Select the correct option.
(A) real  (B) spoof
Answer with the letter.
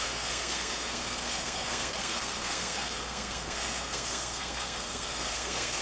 B